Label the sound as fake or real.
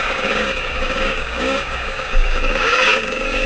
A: fake